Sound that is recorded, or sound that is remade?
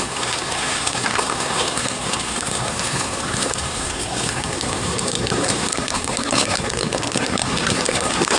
remade